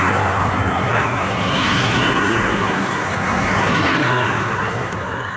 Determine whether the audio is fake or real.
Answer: fake